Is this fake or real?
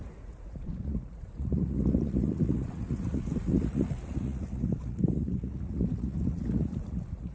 fake